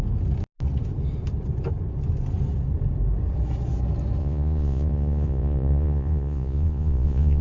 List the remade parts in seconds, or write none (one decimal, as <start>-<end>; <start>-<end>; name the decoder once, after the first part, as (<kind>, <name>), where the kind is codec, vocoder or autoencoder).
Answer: 4.2-7.4 (vocoder, Vocos)